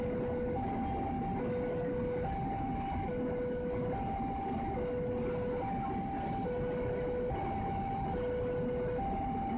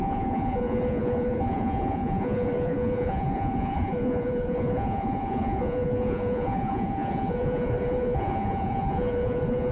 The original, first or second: first